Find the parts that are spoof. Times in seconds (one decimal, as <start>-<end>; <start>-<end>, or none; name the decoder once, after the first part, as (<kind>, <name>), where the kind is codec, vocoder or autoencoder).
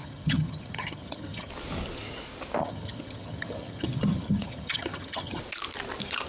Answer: 0.0-1.5 (vocoder, HiFi-GAN); 2.6-5.4